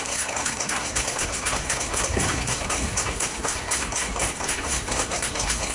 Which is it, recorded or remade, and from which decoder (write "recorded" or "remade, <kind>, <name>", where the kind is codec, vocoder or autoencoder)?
remade, codec, SNAC